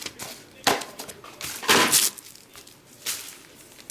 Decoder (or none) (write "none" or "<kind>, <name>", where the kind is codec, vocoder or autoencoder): none